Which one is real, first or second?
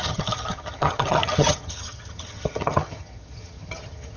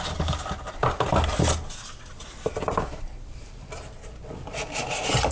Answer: second